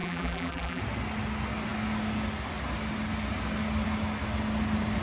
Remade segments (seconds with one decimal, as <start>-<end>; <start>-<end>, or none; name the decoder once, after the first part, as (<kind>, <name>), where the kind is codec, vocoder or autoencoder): 0.0-0.8 (vocoder, BigVGAN v2)